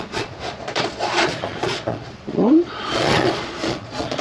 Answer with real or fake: fake